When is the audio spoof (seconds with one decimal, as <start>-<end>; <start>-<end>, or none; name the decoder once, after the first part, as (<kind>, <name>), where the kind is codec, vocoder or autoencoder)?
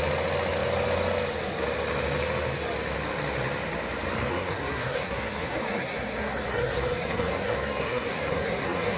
4.3-9.0 (codec, SNAC)